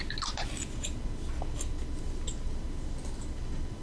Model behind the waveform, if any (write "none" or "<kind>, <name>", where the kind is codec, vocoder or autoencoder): none